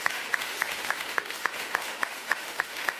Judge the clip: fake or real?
fake